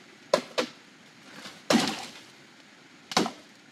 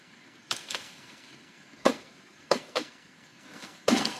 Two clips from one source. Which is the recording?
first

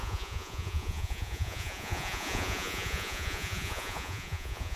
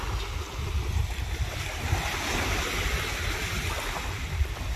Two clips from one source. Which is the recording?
second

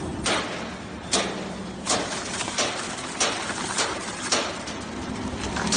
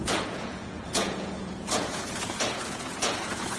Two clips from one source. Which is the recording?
first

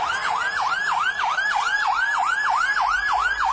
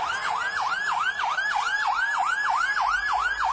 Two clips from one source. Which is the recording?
second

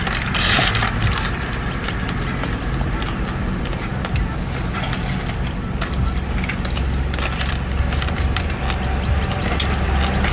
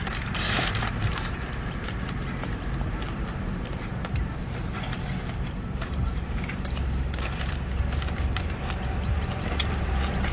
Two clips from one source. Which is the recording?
first